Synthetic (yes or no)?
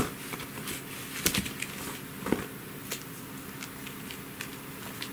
no